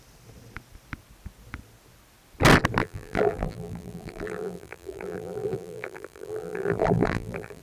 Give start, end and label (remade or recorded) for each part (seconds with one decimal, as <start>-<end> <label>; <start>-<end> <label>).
0.0-2.8 recorded; 2.8-7.6 remade